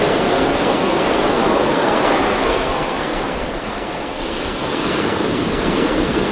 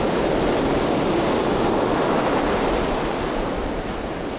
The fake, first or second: first